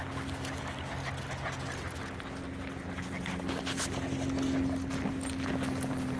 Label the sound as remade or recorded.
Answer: recorded